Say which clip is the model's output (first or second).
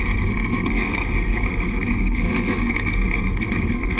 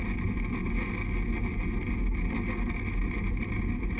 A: first